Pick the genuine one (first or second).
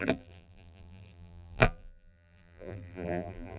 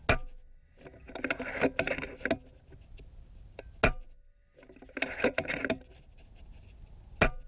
second